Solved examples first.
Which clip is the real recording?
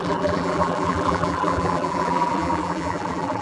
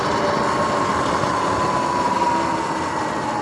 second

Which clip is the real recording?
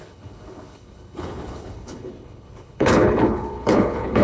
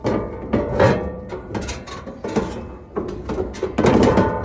second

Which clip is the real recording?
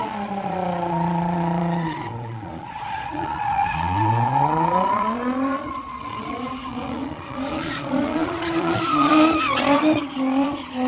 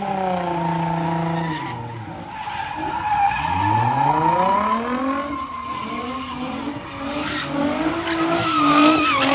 second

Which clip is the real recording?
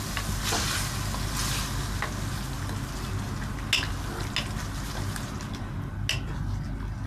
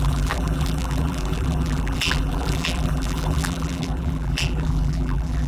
first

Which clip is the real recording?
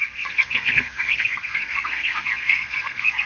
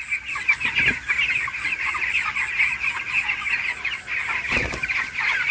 second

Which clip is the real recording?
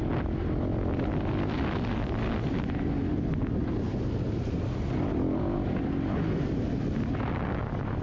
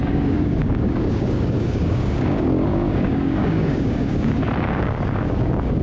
first